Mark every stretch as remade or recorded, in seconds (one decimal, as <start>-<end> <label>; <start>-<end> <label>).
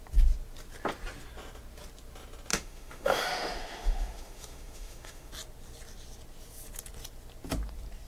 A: 0.0-2.5 recorded; 2.5-5.3 remade; 5.3-8.1 recorded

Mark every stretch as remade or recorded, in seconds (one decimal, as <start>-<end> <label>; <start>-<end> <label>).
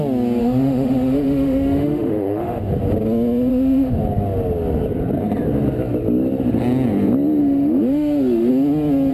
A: 0.0-0.4 recorded; 0.4-2.7 remade; 2.7-3.5 recorded; 3.5-4.0 remade; 4.0-7.4 recorded; 7.4-8.5 remade; 8.5-9.1 recorded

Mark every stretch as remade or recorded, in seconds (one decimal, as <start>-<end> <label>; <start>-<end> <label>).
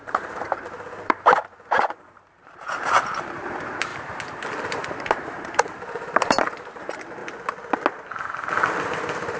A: 0.0-3.9 remade; 3.9-4.7 recorded; 4.7-7.2 remade; 7.2-8.8 recorded; 8.8-9.4 remade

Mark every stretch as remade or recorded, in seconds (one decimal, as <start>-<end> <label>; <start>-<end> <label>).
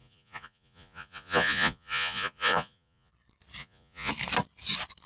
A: 0.0-3.1 remade; 3.1-3.6 recorded; 3.6-4.1 remade; 4.1-5.1 recorded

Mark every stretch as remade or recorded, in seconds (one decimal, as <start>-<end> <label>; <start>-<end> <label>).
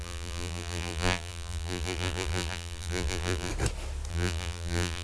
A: 0.0-3.5 remade; 3.5-4.1 recorded; 4.1-5.0 remade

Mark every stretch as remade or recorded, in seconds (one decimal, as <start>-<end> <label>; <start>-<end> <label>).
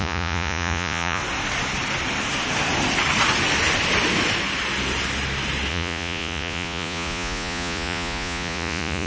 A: 0.0-1.2 remade; 1.2-5.7 recorded; 5.7-9.1 remade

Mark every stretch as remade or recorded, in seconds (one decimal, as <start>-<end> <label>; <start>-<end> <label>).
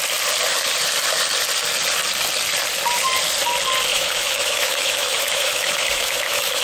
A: 0.0-3.9 recorded; 3.9-6.6 remade